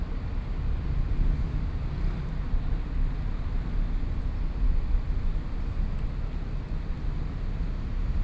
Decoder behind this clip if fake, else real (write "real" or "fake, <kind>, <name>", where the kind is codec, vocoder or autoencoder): real